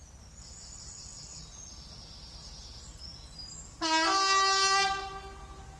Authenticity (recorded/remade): recorded